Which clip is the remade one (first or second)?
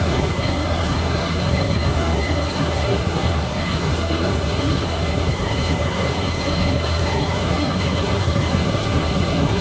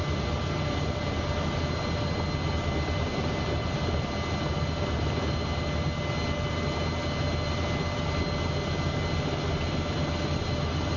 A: first